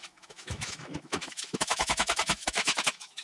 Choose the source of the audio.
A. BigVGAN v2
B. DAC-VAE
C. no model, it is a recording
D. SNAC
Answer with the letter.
B